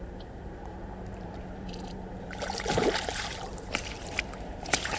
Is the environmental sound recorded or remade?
remade